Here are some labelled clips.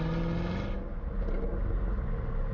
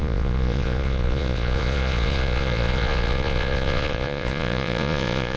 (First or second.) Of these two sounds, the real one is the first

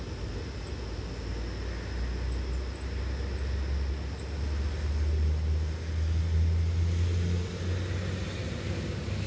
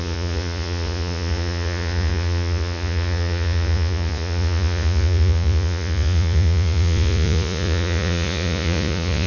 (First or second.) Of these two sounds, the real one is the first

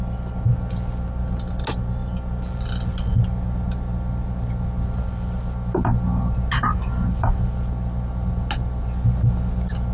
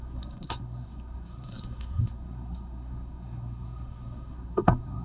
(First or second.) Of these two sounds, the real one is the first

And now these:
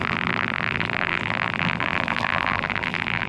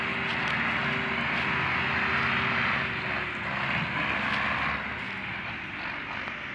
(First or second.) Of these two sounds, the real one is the second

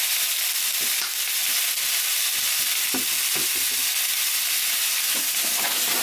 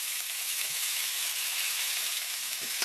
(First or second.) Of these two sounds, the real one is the first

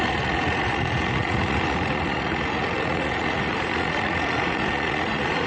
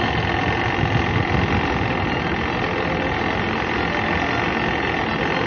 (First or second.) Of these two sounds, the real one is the second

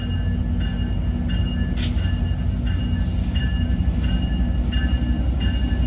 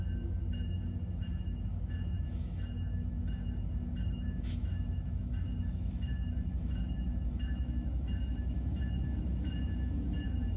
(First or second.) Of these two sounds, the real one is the first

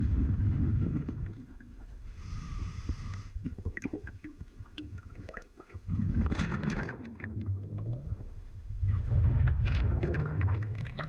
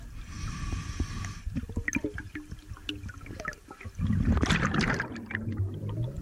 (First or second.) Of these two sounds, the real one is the second